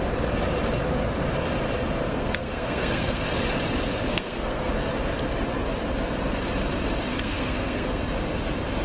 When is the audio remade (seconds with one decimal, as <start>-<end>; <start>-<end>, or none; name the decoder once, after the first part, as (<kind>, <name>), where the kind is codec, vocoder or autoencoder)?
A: 2.1-3.2 (codec, SNAC); 4.1-4.7; 7.1-8.0